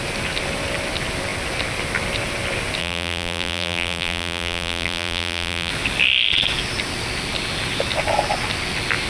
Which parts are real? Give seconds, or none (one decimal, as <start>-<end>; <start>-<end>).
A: 0.0-2.8; 5.7-9.1